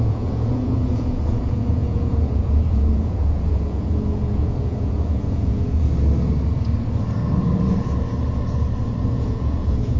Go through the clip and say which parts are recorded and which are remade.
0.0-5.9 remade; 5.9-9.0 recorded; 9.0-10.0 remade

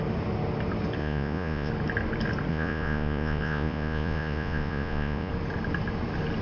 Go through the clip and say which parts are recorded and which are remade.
0.0-1.0 recorded; 1.0-1.7 remade; 1.7-2.5 recorded; 2.5-5.3 remade; 5.3-6.4 recorded

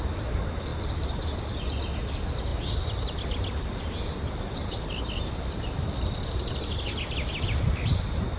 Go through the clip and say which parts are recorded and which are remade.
0.0-8.4 recorded

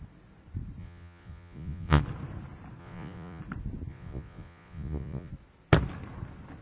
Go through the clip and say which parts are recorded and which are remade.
0.0-0.8 recorded; 0.8-2.0 remade; 2.0-2.8 recorded; 2.8-3.4 remade; 3.4-3.9 recorded; 3.9-5.3 remade; 5.3-6.6 recorded

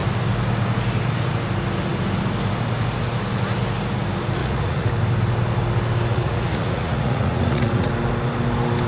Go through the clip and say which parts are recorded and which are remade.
0.0-4.4 recorded; 4.4-4.9 remade; 4.9-6.1 recorded; 6.1-7.9 remade; 7.9-8.9 recorded

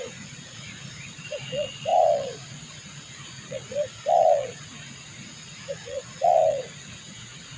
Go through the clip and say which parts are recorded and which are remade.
0.0-7.6 remade